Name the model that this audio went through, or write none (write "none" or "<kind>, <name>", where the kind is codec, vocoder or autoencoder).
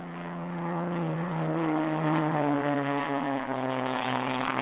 vocoder, Vocos